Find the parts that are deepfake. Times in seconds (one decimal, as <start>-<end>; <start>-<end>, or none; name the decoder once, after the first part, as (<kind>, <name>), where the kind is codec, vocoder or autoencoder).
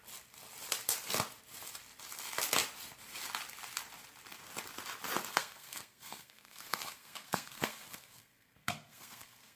5.3-9.6 (codec, SNAC)